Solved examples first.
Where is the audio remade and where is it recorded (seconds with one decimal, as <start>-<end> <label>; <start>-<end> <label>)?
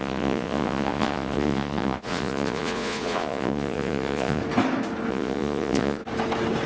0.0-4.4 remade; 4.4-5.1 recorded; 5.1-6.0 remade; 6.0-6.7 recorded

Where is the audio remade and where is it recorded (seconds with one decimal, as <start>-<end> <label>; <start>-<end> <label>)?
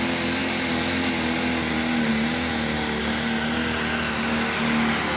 0.0-5.2 recorded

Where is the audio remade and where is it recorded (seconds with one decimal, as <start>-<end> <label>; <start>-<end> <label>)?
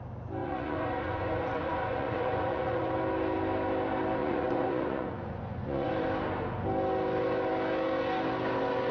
0.0-0.4 recorded; 0.4-2.8 remade; 2.8-4.2 recorded; 4.2-5.9 remade; 5.9-8.9 recorded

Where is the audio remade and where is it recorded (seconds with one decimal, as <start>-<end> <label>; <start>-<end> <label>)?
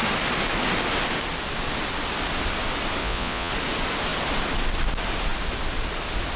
0.0-3.0 recorded; 3.0-3.5 remade; 3.5-6.4 recorded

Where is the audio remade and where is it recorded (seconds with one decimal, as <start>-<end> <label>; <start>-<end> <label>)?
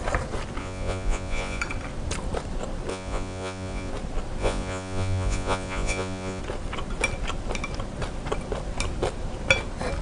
0.0-0.6 recorded; 0.6-1.6 remade; 1.6-2.9 recorded; 2.9-3.9 remade; 3.9-4.4 recorded; 4.4-6.4 remade; 6.4-10.0 recorded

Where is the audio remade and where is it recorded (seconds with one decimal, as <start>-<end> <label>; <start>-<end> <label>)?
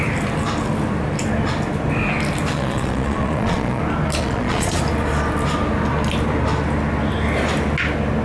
0.0-2.5 recorded; 2.5-3.8 remade; 3.8-4.2 recorded; 4.2-4.8 remade; 4.8-8.2 recorded